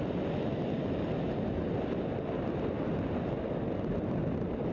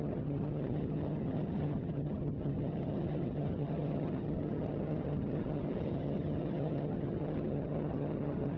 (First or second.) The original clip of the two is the first